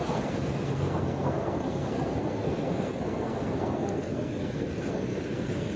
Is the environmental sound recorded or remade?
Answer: remade